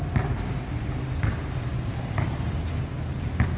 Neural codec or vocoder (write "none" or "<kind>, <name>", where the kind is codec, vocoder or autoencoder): none